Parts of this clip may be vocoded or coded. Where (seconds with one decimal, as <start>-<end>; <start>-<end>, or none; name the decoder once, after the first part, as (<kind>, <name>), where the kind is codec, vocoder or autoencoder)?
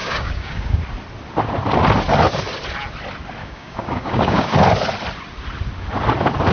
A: 0.0-0.8 (codec, DAC); 3.4-4.5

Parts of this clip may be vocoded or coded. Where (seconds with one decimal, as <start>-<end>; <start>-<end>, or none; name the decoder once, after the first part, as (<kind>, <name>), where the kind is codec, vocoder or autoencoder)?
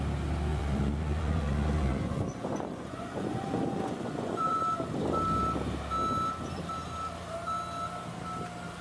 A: 0.5-4.6 (vocoder, Vocos)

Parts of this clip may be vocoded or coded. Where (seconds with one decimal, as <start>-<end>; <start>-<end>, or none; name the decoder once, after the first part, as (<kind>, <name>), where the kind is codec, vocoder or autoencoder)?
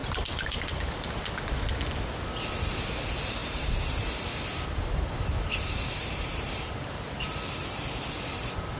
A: 0.0-1.2 (vocoder, BigVGAN v2); 3.4-7.2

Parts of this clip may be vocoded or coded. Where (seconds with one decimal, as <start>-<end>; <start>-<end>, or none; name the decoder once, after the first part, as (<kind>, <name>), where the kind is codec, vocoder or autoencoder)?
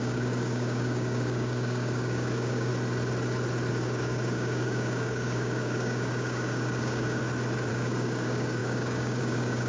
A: 0.0-2.7 (codec, DAC); 3.7-7.2; 7.7-9.7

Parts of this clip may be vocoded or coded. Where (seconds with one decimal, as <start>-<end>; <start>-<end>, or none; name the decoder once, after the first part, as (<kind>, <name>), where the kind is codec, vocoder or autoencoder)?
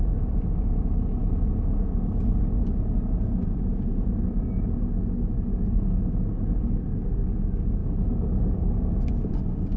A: none